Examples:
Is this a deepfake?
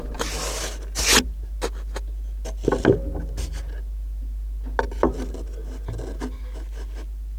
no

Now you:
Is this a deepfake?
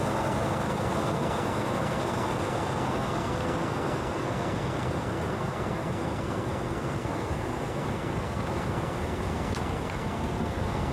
yes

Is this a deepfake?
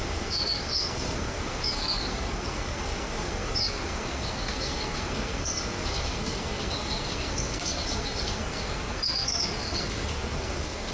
yes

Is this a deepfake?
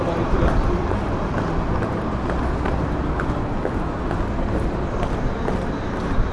no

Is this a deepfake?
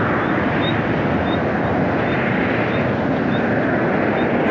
no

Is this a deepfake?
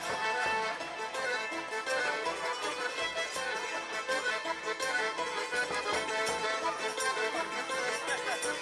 no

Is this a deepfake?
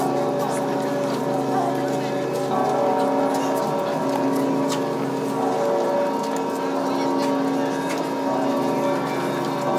no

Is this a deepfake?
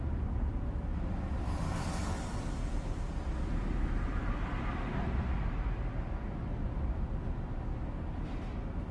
no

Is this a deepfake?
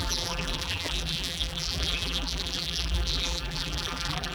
yes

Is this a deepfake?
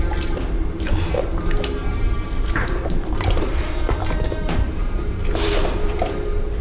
yes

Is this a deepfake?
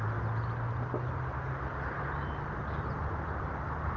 no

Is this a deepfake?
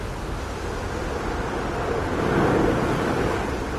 no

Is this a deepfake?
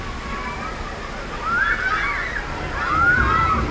no